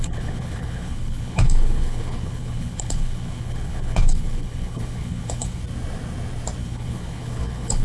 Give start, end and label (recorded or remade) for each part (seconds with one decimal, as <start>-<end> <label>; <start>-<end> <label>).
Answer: 0.0-5.6 remade; 5.6-6.6 recorded; 6.6-7.8 remade